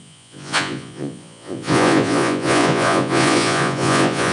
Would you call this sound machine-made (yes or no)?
yes